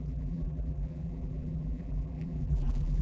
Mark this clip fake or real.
fake